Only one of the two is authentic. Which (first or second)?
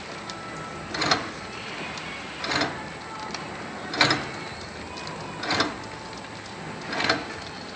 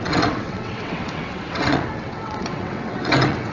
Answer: first